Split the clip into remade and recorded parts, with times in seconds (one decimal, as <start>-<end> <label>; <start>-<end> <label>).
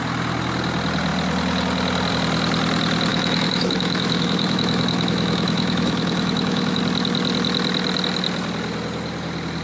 0.0-3.1 recorded; 3.1-6.8 remade; 6.8-9.6 recorded